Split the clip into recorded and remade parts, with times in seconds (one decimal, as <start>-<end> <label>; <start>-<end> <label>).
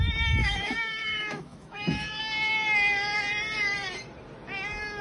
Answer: 0.0-0.4 recorded; 0.4-2.2 remade; 2.2-5.0 recorded